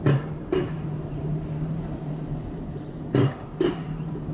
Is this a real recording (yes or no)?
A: no